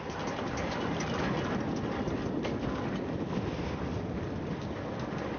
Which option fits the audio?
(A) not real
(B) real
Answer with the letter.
B